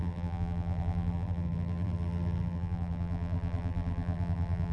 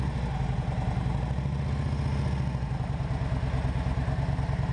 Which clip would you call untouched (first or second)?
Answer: second